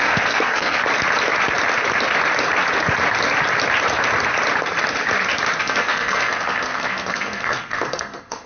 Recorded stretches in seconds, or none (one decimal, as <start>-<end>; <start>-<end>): 0.8-5.6